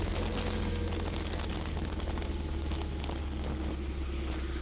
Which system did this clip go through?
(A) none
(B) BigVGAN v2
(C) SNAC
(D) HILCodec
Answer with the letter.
A